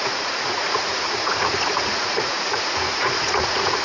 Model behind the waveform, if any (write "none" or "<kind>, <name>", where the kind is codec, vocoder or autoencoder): vocoder, Vocos